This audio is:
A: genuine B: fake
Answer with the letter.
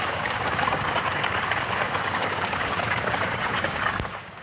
B